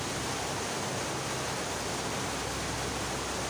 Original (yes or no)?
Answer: yes